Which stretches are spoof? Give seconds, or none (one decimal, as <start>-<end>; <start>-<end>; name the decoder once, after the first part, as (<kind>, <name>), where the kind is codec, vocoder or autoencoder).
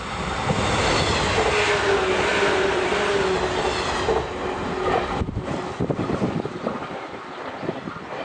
2.3-2.9 (vocoder, BigVGAN v2); 4.6-7.4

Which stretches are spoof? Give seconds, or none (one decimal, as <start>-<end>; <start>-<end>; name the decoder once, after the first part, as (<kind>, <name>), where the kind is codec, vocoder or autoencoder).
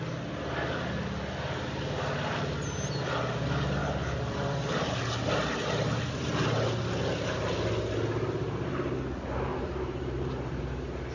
3.8-4.9 (vocoder, BigVGAN v2); 9.5-10.6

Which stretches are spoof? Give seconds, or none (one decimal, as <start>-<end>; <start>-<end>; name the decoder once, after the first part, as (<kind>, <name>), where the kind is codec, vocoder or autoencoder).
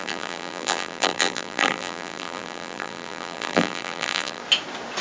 0.0-4.4 (vocoder, BigVGAN v2)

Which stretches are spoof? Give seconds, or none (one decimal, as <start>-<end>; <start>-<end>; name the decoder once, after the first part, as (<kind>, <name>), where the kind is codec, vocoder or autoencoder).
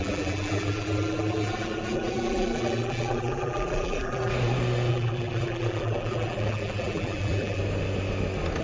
0.0-4.3 (vocoder, BigVGAN v2); 4.9-7.6